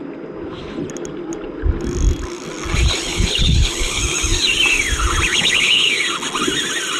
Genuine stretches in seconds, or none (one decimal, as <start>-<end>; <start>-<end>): 0.0-3.1; 4.0-5.3; 6.0-7.0